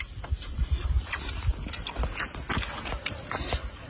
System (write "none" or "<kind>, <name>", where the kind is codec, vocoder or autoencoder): none